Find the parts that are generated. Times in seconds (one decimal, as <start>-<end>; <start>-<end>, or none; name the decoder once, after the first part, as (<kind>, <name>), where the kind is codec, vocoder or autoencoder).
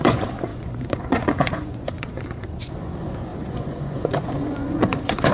0.0-5.3 (vocoder, Vocos)